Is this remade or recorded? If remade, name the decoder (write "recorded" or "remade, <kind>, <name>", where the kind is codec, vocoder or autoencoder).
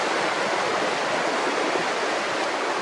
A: recorded